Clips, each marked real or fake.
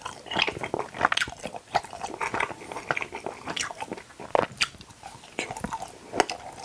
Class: real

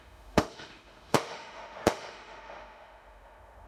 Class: fake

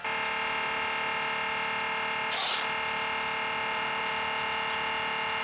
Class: real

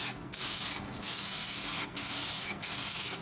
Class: fake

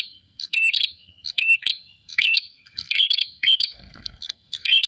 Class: fake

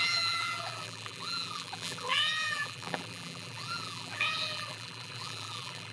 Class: fake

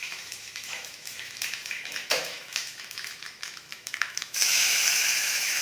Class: fake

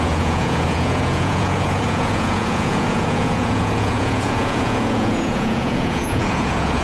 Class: fake